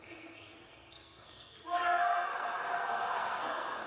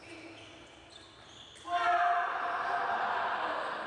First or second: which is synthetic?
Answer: first